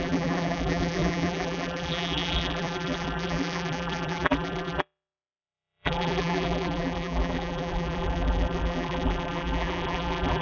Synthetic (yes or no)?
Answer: yes